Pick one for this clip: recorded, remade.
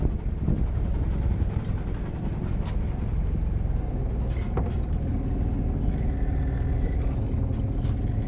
recorded